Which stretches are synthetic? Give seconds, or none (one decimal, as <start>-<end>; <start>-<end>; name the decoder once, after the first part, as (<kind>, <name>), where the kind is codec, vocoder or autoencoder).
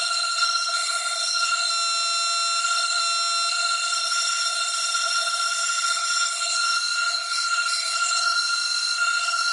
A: 0.0-1.7 (codec, SNAC); 2.6-3.0; 3.5-9.5